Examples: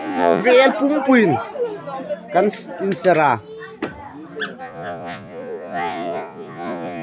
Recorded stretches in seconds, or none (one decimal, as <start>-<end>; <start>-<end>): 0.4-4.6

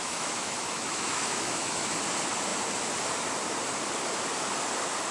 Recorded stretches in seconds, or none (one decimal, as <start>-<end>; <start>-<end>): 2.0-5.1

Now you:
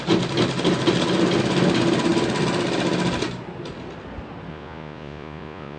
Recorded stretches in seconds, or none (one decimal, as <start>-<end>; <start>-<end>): 0.0-4.5